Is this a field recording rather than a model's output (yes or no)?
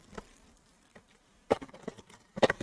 yes